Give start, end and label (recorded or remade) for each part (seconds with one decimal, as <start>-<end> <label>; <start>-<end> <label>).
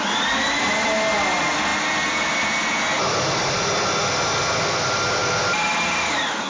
0.0-6.5 recorded